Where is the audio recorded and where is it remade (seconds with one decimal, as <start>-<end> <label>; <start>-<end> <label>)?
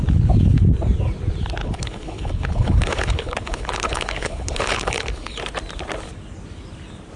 0.0-1.6 recorded; 1.6-5.4 remade; 5.4-7.2 recorded